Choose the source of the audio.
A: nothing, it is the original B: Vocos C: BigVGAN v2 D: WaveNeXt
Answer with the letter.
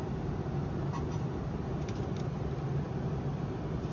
A